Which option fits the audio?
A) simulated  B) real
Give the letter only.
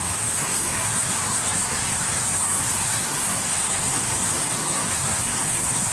A